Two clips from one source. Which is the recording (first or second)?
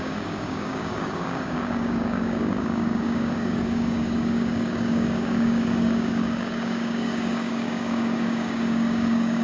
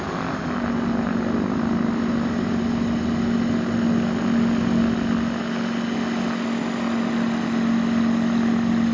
second